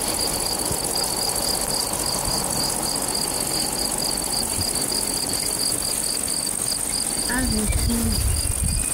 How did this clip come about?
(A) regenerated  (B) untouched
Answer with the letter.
B